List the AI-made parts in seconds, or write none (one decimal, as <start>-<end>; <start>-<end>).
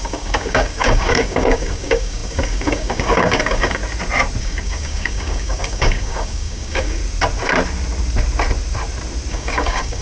0.0-3.8; 4.4-7.0; 9.3-10.0